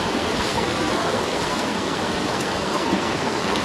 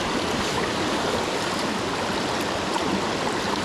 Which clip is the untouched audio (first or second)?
second